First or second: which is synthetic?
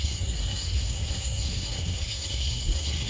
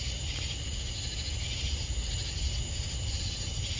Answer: first